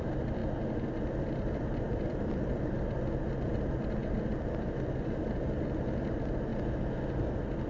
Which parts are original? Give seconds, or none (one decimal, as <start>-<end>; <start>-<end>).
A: 0.4-1.2; 6.5-7.7